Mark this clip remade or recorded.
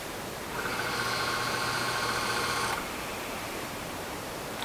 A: remade